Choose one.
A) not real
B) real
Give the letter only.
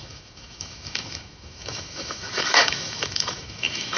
A